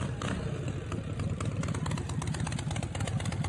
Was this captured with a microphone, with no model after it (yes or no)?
yes